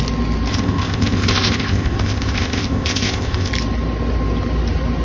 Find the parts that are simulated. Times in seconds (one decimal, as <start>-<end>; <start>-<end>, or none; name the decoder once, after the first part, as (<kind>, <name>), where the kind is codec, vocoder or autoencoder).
0.5-3.5 (codec, ZipCodec)